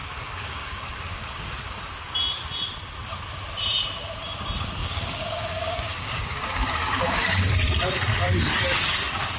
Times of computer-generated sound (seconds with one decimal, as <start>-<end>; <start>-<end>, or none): 0.0-1.8; 4.8-7.5